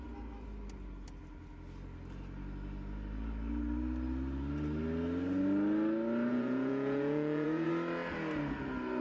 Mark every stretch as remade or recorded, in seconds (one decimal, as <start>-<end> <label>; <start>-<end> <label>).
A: 0.0-6.3 recorded; 6.3-7.7 remade; 7.7-9.0 recorded